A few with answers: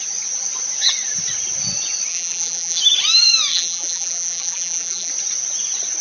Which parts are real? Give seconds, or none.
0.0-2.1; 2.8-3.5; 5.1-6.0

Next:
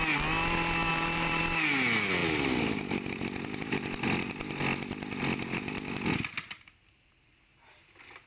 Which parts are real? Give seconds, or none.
0.0-0.9; 1.4-8.3

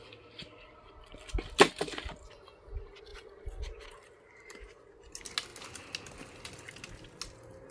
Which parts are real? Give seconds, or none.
0.0-3.1; 3.6-7.7